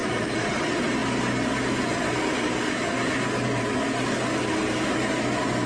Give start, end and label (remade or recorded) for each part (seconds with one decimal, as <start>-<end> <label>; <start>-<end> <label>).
0.0-0.6 remade; 0.6-5.7 recorded